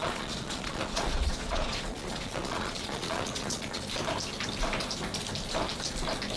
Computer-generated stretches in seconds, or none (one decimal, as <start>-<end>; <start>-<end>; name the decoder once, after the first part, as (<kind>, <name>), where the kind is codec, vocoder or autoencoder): 0.0-3.8 (vocoder, Vocos)